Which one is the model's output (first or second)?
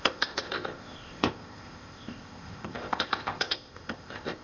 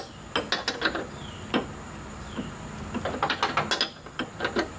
first